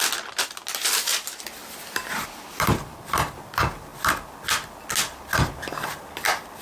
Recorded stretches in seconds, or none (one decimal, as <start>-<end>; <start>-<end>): 0.0-1.6; 3.3-6.6